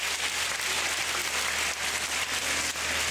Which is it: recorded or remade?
recorded